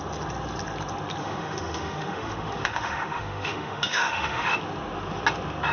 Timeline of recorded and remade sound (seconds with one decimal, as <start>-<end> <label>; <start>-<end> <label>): 0.0-1.2 recorded; 1.2-4.6 remade; 4.6-5.7 recorded